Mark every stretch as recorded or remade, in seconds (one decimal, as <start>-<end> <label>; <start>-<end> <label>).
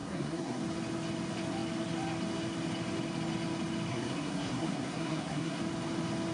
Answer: 0.0-0.6 remade; 0.6-3.9 recorded; 3.9-5.6 remade; 5.6-6.3 recorded